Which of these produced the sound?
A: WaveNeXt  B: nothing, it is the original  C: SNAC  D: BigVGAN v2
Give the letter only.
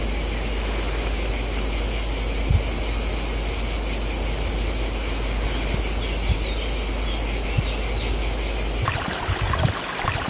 B